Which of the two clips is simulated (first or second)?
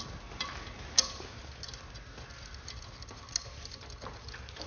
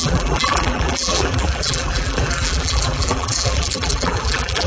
second